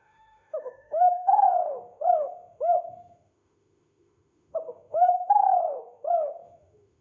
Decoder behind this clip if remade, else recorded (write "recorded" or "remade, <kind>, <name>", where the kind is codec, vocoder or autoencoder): remade, autoencoder, DAC-VAE